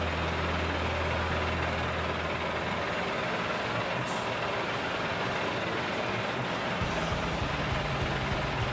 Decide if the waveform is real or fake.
real